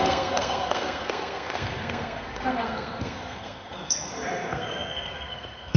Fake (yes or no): yes